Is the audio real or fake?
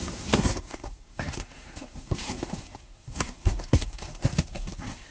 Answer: fake